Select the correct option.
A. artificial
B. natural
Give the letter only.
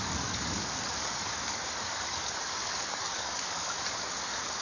A